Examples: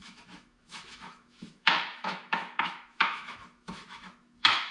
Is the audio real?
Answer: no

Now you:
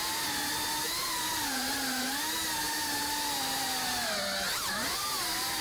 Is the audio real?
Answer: yes